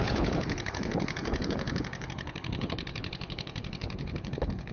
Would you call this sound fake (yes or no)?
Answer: yes